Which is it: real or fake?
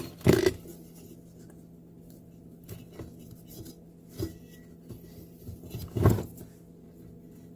real